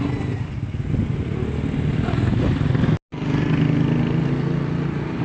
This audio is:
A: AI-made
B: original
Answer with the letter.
B